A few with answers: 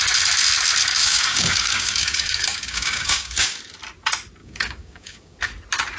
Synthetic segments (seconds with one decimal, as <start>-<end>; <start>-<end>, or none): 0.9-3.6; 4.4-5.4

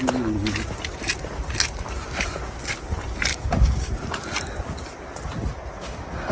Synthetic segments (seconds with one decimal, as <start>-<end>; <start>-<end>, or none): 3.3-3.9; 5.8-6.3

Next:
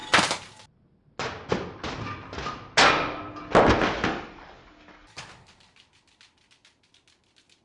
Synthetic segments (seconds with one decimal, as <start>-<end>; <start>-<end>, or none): 4.1-5.3

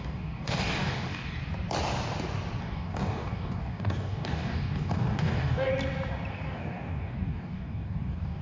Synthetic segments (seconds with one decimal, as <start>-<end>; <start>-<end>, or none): 0.0-1.4; 2.6-5.7; 6.3-8.4

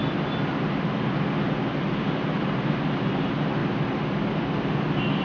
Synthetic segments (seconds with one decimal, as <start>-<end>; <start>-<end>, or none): none